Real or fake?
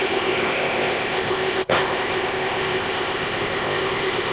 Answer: fake